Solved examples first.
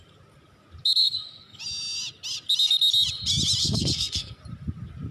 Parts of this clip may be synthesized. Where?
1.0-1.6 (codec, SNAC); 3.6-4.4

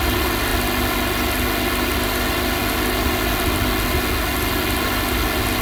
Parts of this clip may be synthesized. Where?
none

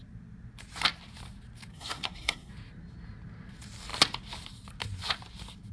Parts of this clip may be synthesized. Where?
1.7-2.5 (codec, SNAC)

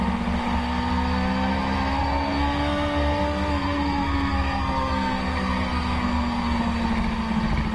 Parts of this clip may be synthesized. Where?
2.0-6.6 (codec, SNAC)

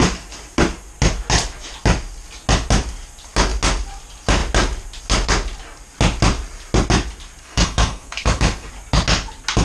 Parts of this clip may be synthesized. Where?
7.4-8.7 (codec, SNAC)